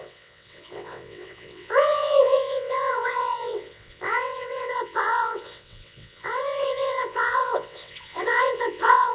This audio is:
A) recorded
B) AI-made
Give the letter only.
B